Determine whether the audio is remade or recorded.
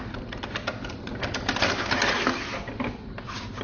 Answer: recorded